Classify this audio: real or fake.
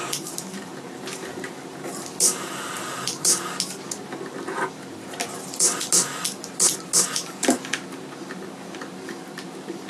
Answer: real